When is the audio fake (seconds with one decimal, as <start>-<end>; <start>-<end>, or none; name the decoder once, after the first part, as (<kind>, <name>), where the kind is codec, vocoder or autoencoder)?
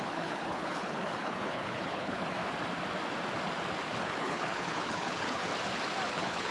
0.0-2.4 (codec, HILCodec); 4.0-5.5; 6.1-6.5